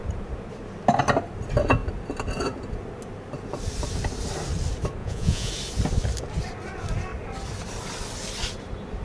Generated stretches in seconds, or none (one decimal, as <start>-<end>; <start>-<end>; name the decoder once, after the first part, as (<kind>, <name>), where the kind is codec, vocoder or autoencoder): 5.0-5.5 (vocoder, Vocos)